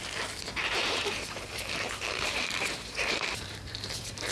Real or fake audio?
fake